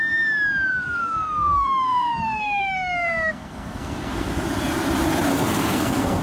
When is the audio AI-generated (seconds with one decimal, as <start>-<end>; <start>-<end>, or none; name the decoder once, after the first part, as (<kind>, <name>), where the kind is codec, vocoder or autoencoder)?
0.7-4.4 (codec, SNAC); 5.3-6.2

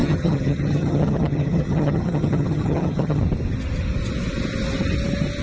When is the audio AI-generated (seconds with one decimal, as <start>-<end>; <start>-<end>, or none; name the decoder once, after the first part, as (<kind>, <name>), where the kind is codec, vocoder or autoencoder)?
0.0-3.2 (vocoder, HiFi-GAN)

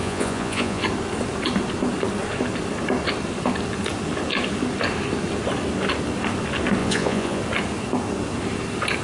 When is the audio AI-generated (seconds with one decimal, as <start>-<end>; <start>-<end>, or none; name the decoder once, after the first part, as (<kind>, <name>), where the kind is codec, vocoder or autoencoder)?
0.0-0.8 (vocoder, Vocos); 6.8-7.4

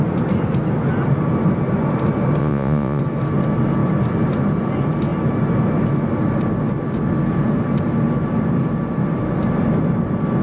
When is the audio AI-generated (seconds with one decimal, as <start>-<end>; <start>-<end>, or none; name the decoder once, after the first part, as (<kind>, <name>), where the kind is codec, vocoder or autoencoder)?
2.4-3.0 (vocoder, Vocos)

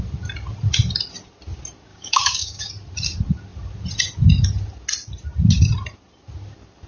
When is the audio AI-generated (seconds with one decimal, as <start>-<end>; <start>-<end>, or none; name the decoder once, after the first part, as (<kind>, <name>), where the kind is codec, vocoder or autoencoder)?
1.9-2.7 (codec, DAC)

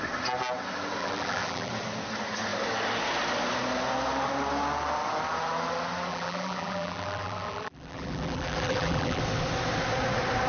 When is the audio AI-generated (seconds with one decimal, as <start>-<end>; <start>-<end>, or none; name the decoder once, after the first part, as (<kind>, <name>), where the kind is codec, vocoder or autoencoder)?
1.0-1.7 (vocoder, BigVGAN v2); 6.1-9.2

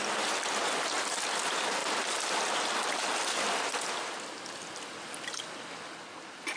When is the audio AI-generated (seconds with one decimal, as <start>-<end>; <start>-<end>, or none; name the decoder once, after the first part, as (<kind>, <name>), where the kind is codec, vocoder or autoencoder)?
none

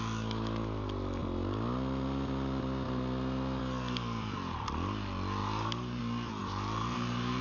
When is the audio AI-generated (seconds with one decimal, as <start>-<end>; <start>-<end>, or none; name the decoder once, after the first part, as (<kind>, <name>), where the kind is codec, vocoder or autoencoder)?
5.4-6.0 (vocoder, BigVGAN v2); 6.4-7.4